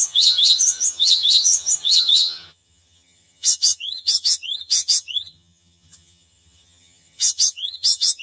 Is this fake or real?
fake